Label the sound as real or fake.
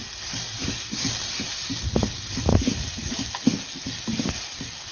real